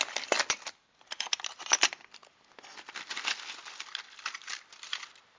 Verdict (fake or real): real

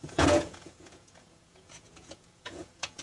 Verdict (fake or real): fake